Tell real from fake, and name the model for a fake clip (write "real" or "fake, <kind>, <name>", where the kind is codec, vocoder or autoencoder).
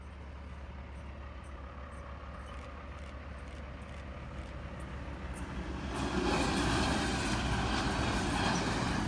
real